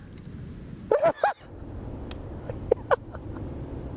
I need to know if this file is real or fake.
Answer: real